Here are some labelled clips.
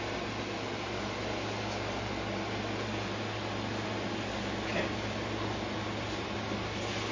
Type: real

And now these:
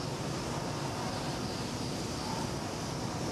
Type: real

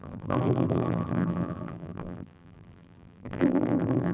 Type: fake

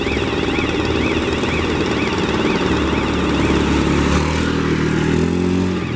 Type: real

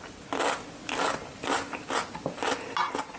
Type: real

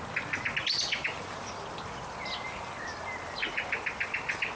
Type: real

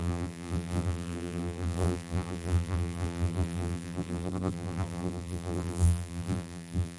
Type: fake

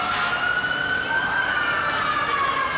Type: real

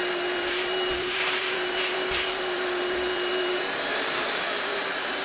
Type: fake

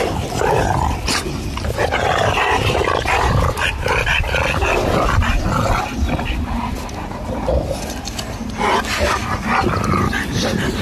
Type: real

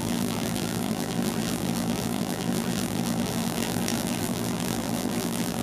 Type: fake